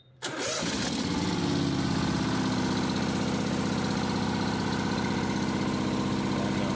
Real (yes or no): yes